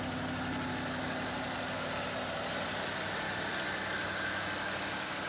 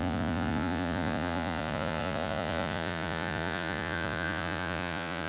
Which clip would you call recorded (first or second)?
first